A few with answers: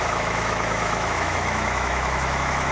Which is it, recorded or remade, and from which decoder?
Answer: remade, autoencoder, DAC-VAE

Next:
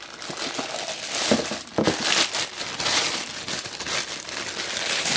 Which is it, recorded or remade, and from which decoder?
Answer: remade, vocoder, BigVGAN v2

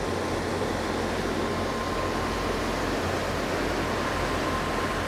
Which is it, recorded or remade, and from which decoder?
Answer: recorded